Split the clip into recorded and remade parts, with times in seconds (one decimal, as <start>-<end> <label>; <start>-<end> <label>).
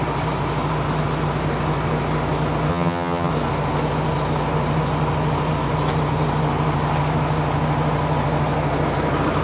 0.0-2.7 recorded; 2.7-3.3 remade; 3.3-9.4 recorded